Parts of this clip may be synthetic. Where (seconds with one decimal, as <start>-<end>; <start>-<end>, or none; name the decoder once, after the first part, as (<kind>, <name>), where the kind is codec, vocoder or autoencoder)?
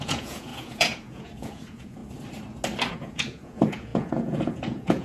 0.0-2.0 (vocoder, Vocos); 2.9-5.0